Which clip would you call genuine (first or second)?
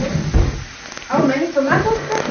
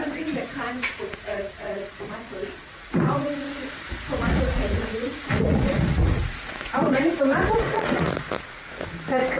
first